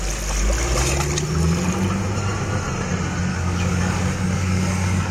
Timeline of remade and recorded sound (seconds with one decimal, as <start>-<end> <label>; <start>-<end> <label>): 0.0-3.3 recorded; 3.3-5.1 remade